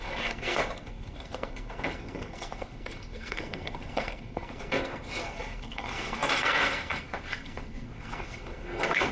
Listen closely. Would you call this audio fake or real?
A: fake